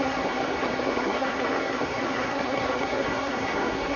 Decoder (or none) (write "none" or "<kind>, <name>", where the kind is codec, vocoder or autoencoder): codec, SNAC